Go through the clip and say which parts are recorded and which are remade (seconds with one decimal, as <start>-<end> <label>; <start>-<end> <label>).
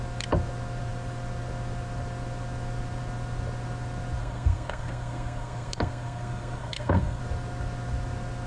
0.0-4.2 recorded; 4.2-7.2 remade; 7.2-8.5 recorded